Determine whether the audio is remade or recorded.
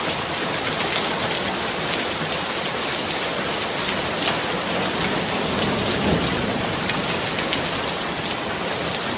recorded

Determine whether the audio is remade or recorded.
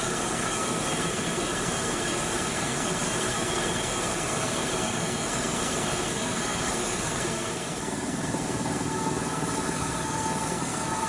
remade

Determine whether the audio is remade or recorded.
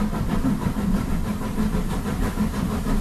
recorded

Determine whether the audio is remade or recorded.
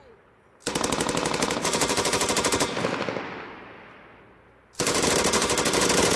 recorded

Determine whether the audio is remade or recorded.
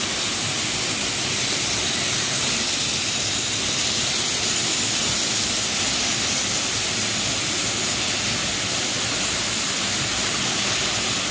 recorded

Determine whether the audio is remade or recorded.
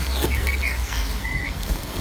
remade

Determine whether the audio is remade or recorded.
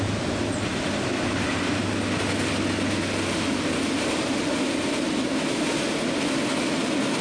recorded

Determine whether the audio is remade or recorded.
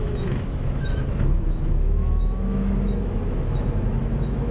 remade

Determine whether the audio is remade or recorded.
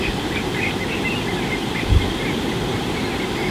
recorded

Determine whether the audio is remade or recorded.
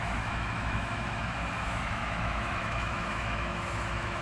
remade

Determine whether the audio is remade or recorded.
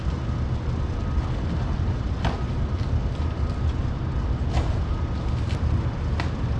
recorded